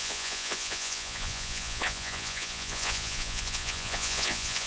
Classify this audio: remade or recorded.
remade